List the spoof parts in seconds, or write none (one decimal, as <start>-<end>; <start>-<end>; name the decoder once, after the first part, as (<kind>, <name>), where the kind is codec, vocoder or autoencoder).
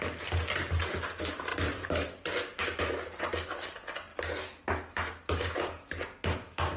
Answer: 1.5-2.8 (vocoder, BigVGAN v2)